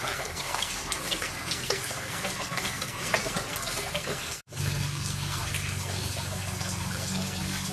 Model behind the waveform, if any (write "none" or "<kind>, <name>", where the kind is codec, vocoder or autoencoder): codec, SNAC